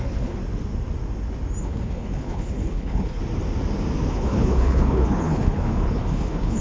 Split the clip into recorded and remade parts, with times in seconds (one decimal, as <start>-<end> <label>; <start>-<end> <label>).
0.0-0.4 remade; 0.4-1.6 recorded; 1.6-3.2 remade; 3.2-4.1 recorded; 4.1-6.6 remade